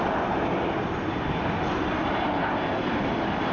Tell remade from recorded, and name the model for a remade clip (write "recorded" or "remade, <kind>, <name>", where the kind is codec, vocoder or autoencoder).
recorded